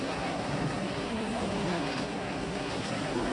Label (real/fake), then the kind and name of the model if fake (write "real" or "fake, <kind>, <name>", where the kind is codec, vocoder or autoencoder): fake, codec, SNAC